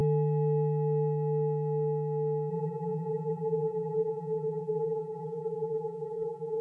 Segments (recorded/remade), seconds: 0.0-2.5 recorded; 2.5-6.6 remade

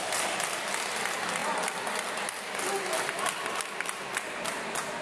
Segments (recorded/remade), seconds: 0.0-5.0 recorded